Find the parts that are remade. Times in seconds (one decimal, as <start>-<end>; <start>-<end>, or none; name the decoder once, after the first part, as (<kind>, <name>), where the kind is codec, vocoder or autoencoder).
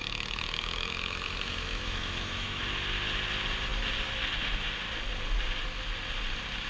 0.0-2.6 (autoencoder, DAC-VAE)